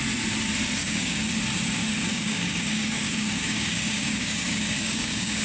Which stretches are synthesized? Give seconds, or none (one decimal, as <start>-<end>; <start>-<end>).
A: 0.8-1.4; 2.1-5.4